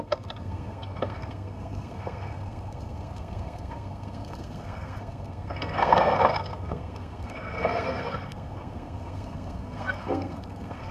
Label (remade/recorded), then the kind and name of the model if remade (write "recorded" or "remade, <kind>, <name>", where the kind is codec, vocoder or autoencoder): remade, codec, SNAC